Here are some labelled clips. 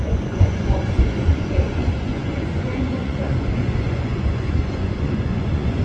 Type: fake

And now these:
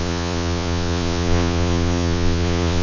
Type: fake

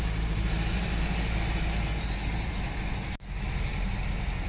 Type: real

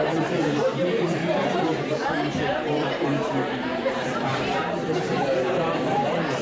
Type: fake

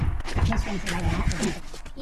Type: real